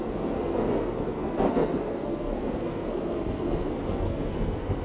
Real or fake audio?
fake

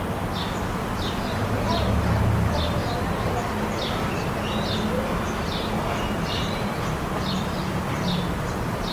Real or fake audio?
real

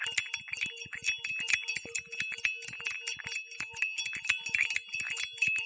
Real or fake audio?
real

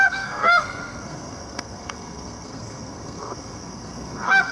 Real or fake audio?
fake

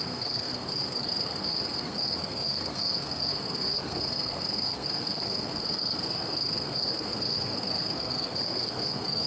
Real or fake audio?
fake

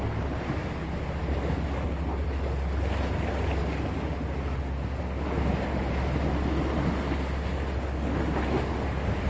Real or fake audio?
real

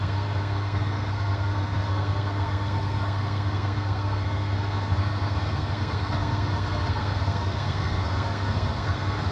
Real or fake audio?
fake